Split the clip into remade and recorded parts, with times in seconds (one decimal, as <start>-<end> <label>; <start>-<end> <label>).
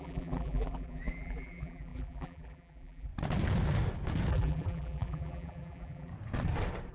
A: 0.0-3.1 remade; 3.1-4.3 recorded; 4.3-6.1 remade; 6.1-6.9 recorded